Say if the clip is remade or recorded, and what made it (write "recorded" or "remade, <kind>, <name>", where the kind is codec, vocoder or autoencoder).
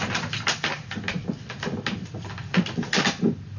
recorded